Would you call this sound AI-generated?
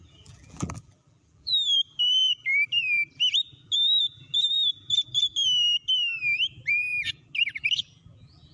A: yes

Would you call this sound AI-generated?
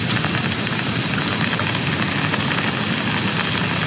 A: no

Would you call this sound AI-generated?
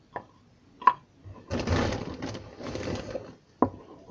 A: no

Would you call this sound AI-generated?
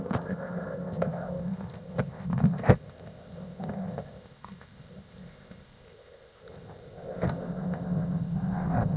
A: yes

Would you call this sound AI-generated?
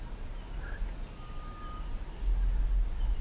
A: no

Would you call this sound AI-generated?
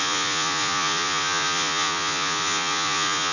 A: yes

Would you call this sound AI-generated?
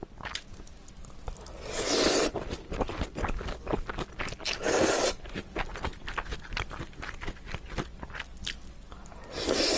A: no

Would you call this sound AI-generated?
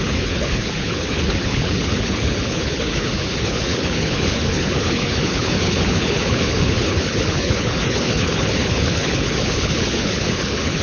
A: yes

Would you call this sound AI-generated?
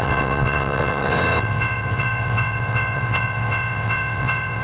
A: yes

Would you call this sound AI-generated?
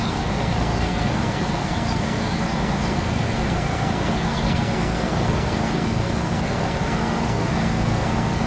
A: yes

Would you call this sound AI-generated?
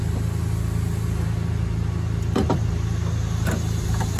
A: no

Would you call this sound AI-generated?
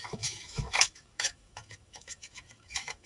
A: yes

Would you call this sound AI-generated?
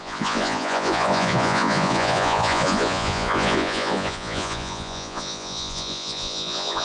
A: yes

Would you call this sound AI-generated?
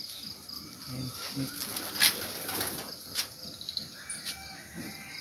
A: no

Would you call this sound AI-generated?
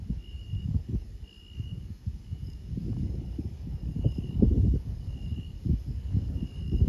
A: yes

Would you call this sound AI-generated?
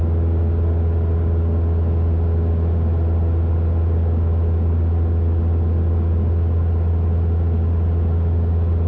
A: no